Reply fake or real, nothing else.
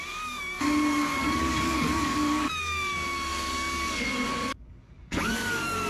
fake